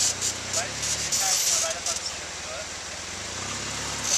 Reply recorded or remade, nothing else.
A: recorded